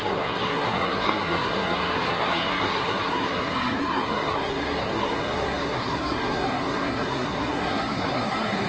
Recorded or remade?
remade